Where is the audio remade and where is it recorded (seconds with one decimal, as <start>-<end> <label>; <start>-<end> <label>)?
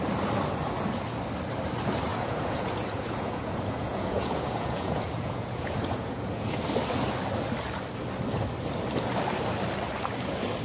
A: 0.0-2.1 recorded; 2.1-6.6 remade; 6.6-10.6 recorded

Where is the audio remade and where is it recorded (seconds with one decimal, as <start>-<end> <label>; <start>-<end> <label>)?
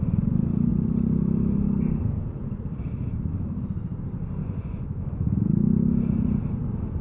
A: 0.0-4.4 recorded; 4.4-5.1 remade; 5.1-7.0 recorded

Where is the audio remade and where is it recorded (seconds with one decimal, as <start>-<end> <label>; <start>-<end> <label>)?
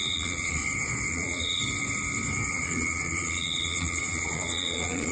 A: 0.0-0.6 remade; 0.6-1.1 recorded; 1.1-1.6 remade; 1.6-2.5 recorded; 2.5-5.1 remade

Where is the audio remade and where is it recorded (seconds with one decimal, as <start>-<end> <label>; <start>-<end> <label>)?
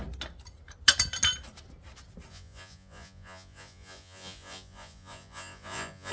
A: 0.0-2.3 recorded; 2.3-6.1 remade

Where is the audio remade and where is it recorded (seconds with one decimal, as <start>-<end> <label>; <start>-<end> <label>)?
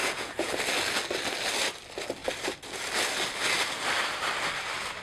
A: 0.0-0.5 remade; 0.5-5.0 recorded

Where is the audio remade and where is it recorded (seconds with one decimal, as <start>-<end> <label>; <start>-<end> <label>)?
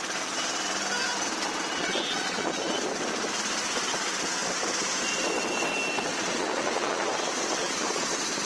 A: 0.0-1.8 recorded; 1.8-2.8 remade; 2.8-6.1 recorded; 6.1-8.4 remade